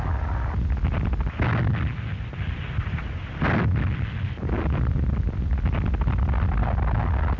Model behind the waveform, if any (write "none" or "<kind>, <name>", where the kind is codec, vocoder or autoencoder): none